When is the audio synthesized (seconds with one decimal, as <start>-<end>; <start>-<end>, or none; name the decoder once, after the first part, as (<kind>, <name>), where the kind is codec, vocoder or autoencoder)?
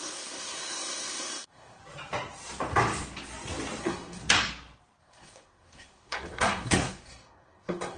0.0-1.8 (codec, SNAC); 3.8-4.5; 5.0-8.0